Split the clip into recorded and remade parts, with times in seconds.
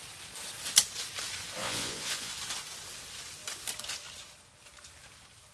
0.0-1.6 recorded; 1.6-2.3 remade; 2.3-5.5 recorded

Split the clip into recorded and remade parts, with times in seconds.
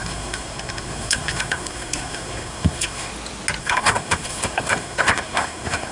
0.0-3.1 remade; 3.1-3.6 recorded; 3.6-5.9 remade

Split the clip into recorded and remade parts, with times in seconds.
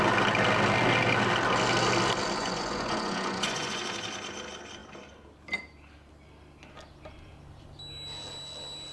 0.0-2.4 recorded; 2.4-3.8 remade; 3.8-8.9 recorded